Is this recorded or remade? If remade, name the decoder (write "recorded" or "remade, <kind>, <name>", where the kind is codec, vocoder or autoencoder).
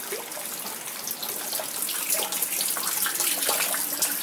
recorded